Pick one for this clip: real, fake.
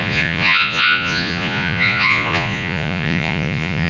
fake